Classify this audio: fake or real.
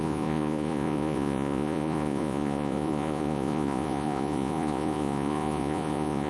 fake